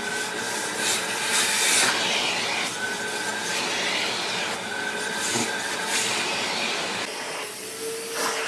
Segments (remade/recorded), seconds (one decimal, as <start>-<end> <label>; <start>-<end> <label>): 0.0-8.5 recorded